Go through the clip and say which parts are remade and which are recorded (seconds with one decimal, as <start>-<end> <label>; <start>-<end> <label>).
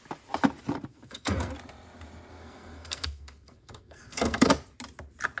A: 0.0-0.9 recorded; 0.9-1.5 remade; 1.5-2.3 recorded; 2.3-4.5 remade; 4.5-5.4 recorded